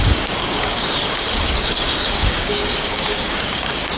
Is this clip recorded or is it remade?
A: remade